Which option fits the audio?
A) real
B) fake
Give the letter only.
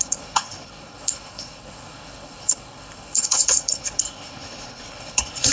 B